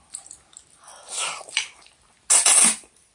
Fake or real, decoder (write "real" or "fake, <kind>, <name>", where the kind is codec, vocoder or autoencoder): real